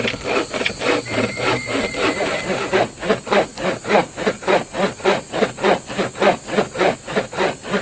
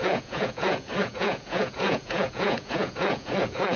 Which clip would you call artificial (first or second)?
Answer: second